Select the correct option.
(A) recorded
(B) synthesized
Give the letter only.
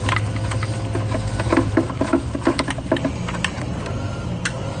A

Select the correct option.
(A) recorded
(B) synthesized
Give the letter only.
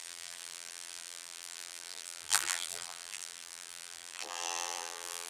B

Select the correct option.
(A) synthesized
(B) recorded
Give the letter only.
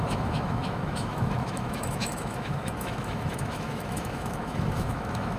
A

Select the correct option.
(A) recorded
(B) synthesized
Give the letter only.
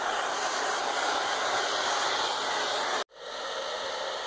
A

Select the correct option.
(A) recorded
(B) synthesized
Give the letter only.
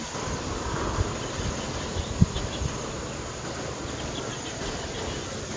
A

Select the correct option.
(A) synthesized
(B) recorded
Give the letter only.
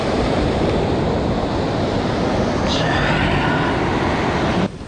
B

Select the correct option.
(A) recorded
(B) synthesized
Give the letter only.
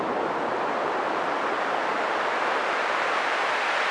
B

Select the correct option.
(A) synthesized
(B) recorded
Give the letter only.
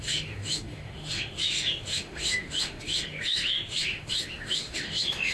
A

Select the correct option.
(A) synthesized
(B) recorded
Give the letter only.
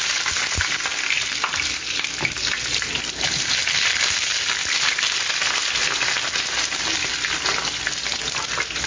B